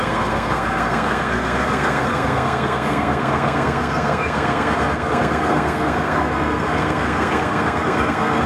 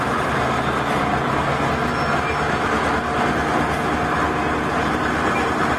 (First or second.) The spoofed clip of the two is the first